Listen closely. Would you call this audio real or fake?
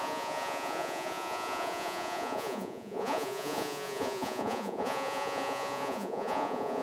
fake